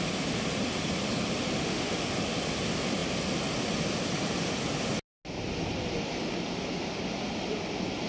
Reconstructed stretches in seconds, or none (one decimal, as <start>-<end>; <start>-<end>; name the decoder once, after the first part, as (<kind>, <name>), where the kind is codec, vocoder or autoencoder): 1.6-2.1 (autoencoder, DAC-VAE)